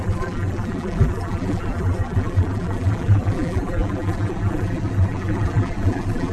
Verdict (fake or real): fake